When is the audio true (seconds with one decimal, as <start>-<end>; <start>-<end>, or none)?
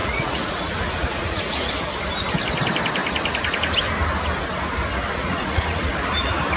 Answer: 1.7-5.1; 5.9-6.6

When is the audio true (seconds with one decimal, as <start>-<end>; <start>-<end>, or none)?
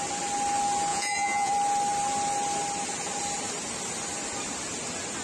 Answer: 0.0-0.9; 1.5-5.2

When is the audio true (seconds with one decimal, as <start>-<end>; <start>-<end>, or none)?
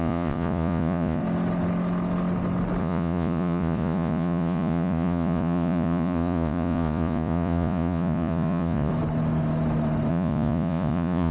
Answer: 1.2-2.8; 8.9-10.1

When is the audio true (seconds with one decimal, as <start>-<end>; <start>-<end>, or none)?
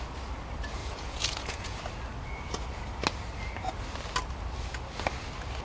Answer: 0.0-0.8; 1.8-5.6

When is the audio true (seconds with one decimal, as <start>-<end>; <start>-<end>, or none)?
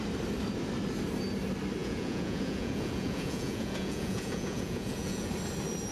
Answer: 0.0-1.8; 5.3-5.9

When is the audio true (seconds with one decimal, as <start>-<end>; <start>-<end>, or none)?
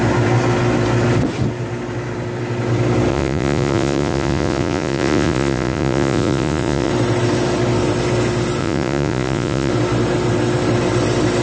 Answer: 0.0-3.1; 6.9-8.6; 9.7-11.4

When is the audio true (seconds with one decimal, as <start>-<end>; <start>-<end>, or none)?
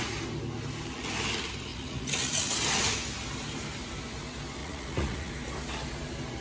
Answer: 0.0-1.7; 2.5-4.6; 5.3-6.4